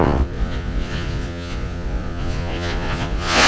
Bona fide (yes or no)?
no